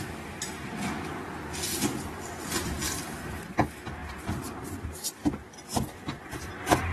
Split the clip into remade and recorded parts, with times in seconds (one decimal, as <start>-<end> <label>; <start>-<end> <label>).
0.0-4.0 recorded; 4.0-6.3 remade; 6.3-6.9 recorded